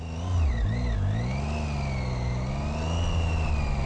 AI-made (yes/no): no